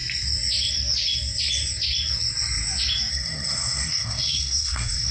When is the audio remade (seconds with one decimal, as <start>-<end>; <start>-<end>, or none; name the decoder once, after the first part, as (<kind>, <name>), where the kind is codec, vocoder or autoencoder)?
3.1-5.1 (codec, SNAC)